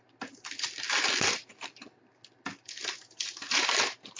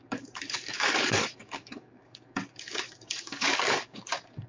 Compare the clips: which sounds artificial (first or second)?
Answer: second